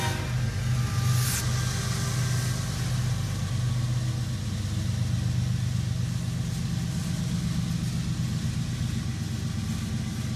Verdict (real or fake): real